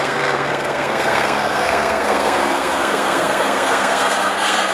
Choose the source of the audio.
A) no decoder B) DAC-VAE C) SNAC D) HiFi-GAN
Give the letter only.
C